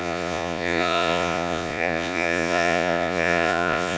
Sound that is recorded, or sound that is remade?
remade